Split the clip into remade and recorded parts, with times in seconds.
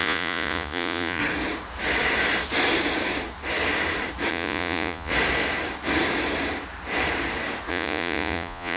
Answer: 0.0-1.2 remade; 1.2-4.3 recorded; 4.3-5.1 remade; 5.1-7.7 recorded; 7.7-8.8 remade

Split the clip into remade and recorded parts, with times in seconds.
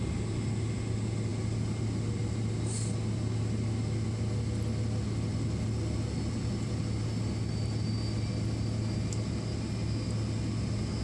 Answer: 0.0-11.0 recorded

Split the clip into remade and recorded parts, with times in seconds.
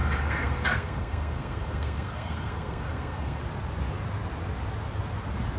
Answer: 0.0-3.4 remade; 3.4-5.6 recorded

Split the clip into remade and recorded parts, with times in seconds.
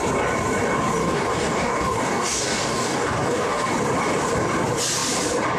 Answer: 0.0-1.0 recorded; 1.0-3.7 remade; 3.7-5.6 recorded